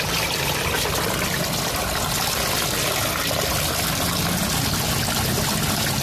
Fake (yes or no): no